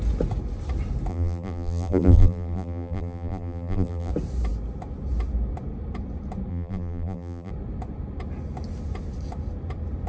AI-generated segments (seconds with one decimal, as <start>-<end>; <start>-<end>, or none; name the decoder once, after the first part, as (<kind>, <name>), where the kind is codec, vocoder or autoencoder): 1.1-4.1 (vocoder, BigVGAN v2); 6.5-7.5